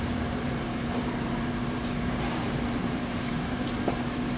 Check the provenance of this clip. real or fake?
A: fake